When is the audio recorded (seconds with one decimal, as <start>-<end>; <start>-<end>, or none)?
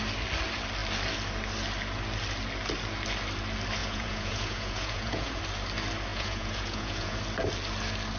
0.0-3.8; 5.4-6.1; 7.2-8.2